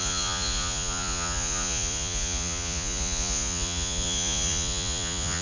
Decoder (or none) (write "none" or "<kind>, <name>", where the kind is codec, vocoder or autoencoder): vocoder, Vocos